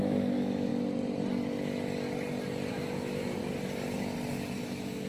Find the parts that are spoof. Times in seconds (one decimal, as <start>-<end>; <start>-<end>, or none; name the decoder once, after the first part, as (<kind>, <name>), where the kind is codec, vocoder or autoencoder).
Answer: 0.0-0.7 (autoencoder, DAC-VAE); 2.7-3.4; 4.6-5.1